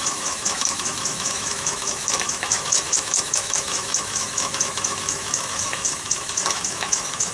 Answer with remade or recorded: remade